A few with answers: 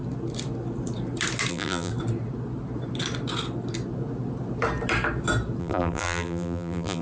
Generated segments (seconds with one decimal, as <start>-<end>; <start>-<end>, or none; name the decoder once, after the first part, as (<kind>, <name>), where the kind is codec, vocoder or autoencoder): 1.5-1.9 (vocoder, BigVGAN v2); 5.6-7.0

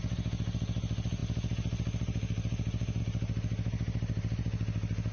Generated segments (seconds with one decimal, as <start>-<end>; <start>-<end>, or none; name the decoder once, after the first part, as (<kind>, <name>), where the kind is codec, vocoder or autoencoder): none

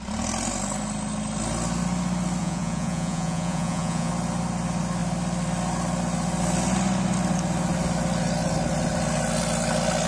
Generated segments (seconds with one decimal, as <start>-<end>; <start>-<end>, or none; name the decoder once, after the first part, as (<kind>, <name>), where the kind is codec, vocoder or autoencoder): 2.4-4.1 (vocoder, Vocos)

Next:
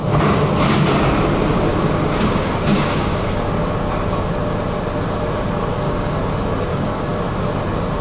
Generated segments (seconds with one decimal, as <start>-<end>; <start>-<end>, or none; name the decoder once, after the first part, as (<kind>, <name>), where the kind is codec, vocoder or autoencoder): 1.7-3.6 (codec, DAC); 5.7-6.2; 6.7-7.2